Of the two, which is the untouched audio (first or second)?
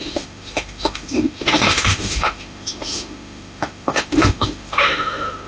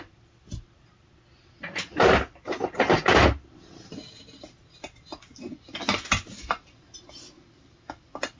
second